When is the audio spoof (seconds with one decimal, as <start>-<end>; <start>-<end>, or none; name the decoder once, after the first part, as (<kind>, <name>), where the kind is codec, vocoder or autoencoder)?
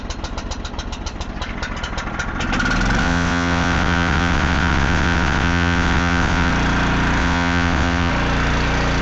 3.0-6.5 (vocoder, WaveNeXt); 7.2-8.1